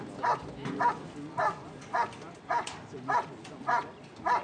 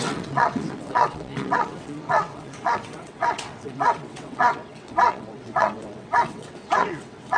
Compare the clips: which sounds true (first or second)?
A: first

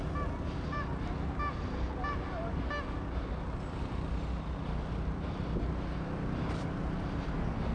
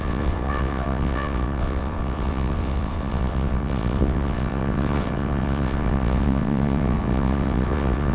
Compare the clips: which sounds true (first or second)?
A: first